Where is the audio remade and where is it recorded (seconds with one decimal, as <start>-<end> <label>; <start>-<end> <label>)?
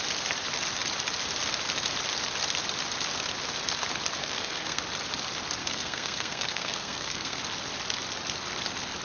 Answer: 0.0-4.2 recorded; 4.2-4.8 remade; 4.8-5.6 recorded; 5.6-7.4 remade; 7.4-9.0 recorded